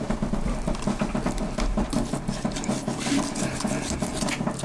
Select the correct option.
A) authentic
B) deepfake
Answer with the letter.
B